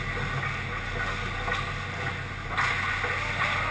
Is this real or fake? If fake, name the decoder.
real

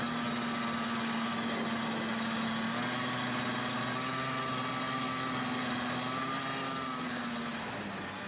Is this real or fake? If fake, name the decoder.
real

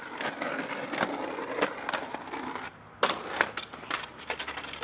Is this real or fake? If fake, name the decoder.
real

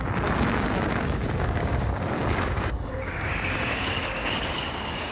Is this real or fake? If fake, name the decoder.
fake, codec, DAC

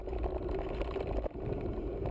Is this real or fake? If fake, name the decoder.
real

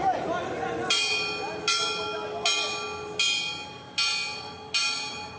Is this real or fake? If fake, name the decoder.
real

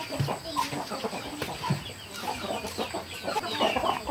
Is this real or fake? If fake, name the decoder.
real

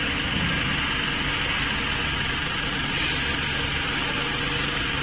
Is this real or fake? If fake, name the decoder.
real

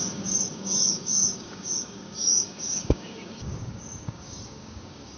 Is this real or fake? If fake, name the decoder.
fake, codec, DAC